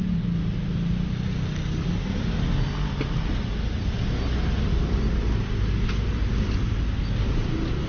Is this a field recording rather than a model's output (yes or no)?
yes